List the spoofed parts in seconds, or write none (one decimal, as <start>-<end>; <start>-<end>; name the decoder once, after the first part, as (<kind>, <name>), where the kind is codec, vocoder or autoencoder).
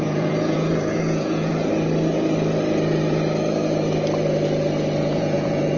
0.0-1.5 (vocoder, Vocos); 5.0-5.8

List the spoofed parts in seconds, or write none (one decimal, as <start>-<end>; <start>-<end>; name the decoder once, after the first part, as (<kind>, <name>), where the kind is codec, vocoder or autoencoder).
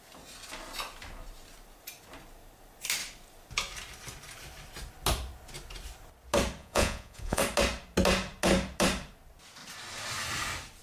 6.6-7.4 (vocoder, Vocos)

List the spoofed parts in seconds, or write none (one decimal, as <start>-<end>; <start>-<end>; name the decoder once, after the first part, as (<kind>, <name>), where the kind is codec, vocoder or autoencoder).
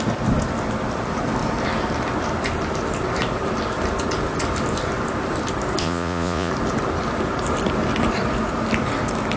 5.8-6.5 (vocoder, Vocos)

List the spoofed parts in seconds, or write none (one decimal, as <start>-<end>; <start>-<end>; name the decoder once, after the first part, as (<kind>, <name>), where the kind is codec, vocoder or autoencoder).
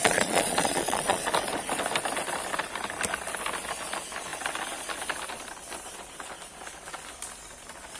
0.0-1.3 (vocoder, Vocos)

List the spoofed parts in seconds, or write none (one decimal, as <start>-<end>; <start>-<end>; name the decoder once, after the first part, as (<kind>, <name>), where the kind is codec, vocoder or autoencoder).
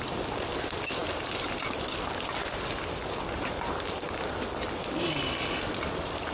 none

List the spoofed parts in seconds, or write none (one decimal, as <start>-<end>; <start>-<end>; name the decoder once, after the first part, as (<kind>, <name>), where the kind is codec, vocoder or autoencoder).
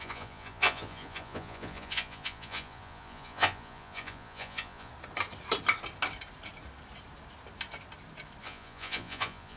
0.0-4.9 (vocoder, Vocos); 8.4-9.6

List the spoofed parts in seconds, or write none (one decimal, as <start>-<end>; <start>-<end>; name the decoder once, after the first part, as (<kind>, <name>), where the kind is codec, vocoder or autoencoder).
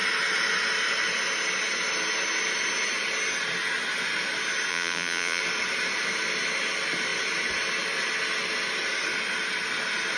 4.7-5.4 (vocoder, Vocos)